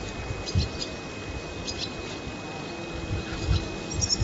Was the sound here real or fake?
real